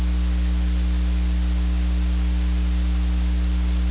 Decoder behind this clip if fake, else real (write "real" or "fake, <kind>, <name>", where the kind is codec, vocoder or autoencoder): real